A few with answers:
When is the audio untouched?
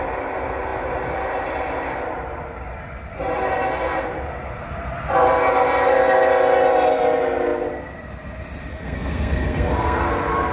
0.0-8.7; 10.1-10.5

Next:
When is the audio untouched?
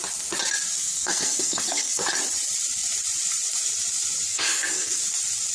0.0-0.8; 2.0-4.3; 5.0-5.5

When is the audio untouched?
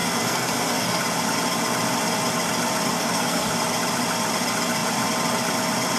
1.0-2.9; 3.5-6.0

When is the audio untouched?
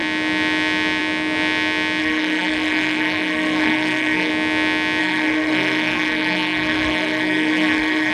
0.0-2.0; 4.3-5.0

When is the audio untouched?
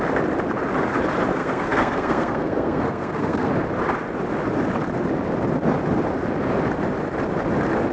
0.0-1.3; 3.5-7.9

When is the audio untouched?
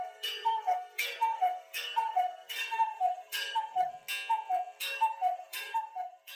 3.9-4.8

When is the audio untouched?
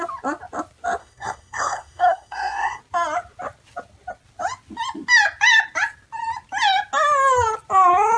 0.0-1.0; 2.8-8.2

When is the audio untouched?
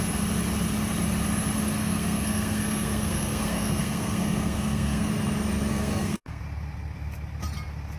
0.0-1.8; 5.1-5.7; 6.4-8.0